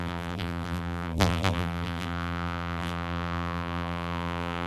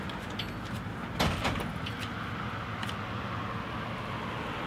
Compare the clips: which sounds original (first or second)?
second